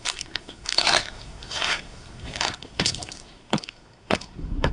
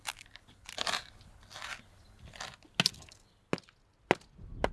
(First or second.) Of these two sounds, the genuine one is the second